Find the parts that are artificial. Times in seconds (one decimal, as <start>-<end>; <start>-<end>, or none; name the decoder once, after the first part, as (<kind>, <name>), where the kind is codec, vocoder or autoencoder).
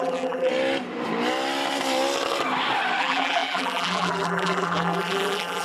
0.0-0.5 (vocoder, BigVGAN v2); 3.0-5.6